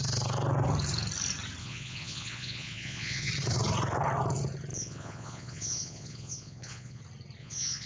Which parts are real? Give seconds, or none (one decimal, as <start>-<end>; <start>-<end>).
0.0-1.6; 3.3-4.7; 7.0-7.4